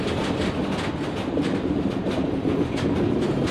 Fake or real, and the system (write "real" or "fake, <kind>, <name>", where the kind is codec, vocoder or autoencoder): real